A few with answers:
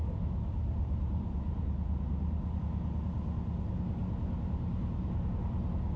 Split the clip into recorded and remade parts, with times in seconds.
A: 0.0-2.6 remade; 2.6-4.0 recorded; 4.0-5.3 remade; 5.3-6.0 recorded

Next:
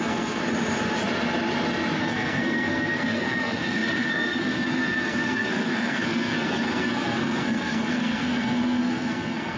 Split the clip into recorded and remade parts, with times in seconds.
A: 0.0-0.4 remade; 0.4-2.0 recorded; 2.0-9.6 remade

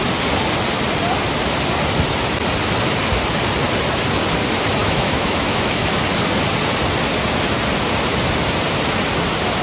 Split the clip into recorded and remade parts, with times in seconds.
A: 0.0-4.8 recorded; 4.8-5.9 remade; 5.9-9.6 recorded

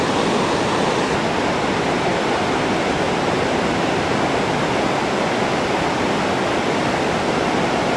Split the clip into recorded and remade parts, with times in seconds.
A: 0.0-8.0 recorded

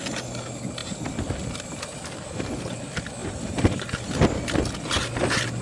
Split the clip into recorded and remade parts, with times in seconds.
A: 0.0-3.2 recorded; 3.2-4.1 remade; 4.1-5.6 recorded

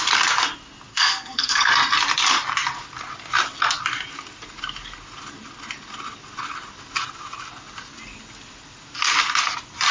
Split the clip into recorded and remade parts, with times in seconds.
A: 0.0-0.9 recorded; 0.9-1.7 remade; 1.7-9.9 recorded

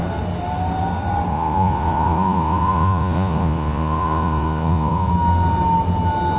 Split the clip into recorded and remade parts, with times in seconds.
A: 0.0-1.3 recorded; 1.3-5.1 remade; 5.1-6.4 recorded

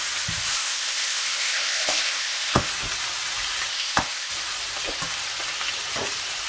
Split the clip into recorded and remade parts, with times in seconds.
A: 0.0-0.5 recorded; 0.5-2.7 remade; 2.7-3.7 recorded; 3.7-4.3 remade; 4.3-6.5 recorded